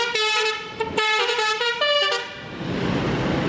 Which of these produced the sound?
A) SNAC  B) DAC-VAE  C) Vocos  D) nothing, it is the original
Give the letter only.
D